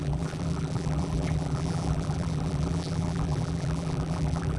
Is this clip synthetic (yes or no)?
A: yes